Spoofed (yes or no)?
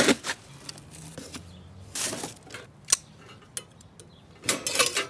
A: no